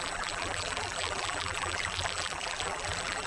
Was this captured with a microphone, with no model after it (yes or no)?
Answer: no